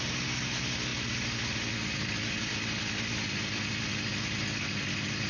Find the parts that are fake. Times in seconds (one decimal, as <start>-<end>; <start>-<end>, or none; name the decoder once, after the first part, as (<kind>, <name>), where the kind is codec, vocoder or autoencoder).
none